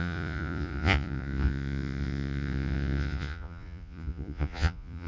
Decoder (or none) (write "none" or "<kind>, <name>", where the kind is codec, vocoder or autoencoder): vocoder, Vocos